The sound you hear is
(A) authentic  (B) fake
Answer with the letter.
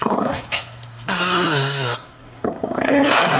B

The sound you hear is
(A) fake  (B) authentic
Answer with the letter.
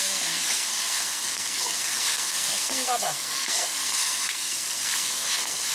A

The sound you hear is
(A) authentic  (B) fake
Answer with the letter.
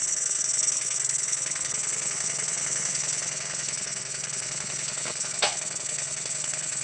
B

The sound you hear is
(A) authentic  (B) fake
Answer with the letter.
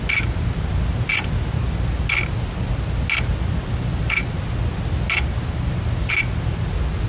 A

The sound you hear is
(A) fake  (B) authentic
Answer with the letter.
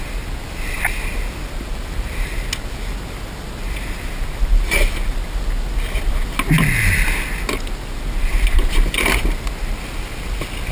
B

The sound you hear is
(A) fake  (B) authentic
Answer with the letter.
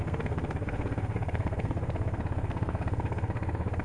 A